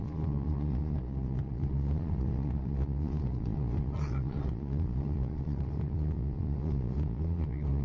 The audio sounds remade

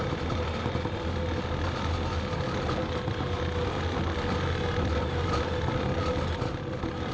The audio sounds recorded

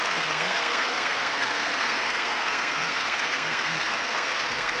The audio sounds remade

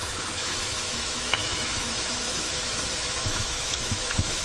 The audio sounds remade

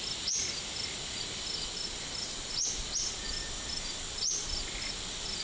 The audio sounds recorded